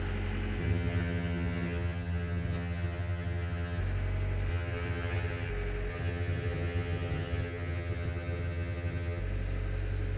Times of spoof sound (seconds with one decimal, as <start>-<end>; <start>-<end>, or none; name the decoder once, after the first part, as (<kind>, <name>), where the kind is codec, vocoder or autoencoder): 0.6-3.8 (vocoder, HiFi-GAN); 4.5-5.5; 5.9-9.2